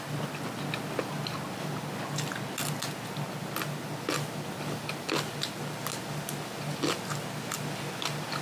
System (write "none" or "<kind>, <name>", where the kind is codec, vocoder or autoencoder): none